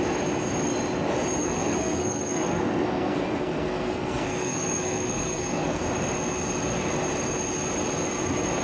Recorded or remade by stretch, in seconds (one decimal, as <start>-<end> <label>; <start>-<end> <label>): 0.0-1.4 recorded; 1.4-5.8 remade; 5.8-8.6 recorded